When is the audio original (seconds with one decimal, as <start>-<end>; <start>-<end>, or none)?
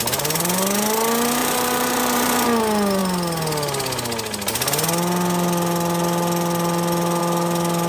0.0-1.4; 2.6-7.9